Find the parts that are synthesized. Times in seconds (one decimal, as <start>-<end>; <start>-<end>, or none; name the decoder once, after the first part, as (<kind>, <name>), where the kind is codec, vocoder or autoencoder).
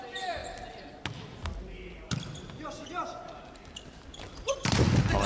none